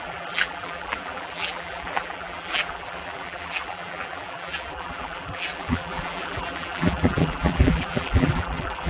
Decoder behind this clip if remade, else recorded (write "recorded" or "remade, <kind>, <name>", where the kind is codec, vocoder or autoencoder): remade, vocoder, BigVGAN v2